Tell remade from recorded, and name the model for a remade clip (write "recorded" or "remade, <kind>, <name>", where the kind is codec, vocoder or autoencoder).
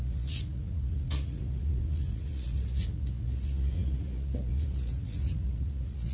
remade, vocoder, Vocos